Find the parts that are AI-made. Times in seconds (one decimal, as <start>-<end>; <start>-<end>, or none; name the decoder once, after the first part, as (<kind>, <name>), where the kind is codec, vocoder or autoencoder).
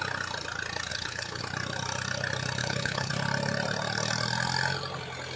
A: 0.9-1.4 (codec, HILCodec); 2.6-3.1